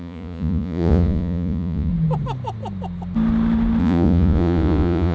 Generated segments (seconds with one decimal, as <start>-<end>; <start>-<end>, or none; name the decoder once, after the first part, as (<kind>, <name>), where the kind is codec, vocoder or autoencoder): 0.0-1.9 (vocoder, Vocos); 3.8-5.1